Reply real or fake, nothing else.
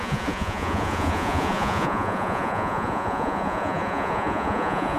fake